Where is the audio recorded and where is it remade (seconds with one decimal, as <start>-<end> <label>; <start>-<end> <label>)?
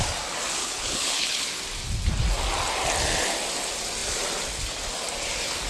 0.0-0.6 recorded; 0.6-1.6 remade; 1.6-5.7 recorded